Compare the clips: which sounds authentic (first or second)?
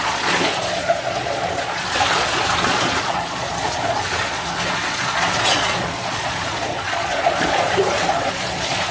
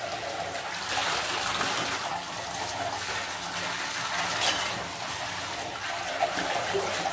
second